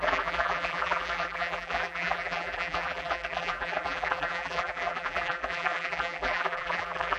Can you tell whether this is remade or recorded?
remade